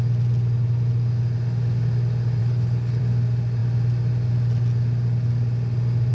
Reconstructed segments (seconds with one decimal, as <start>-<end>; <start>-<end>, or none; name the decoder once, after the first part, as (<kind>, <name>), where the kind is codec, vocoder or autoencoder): 2.4-3.0 (codec, HILCodec)